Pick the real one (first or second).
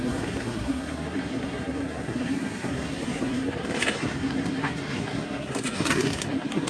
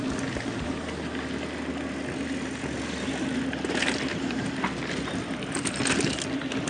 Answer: second